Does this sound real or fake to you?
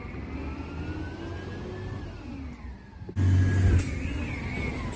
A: real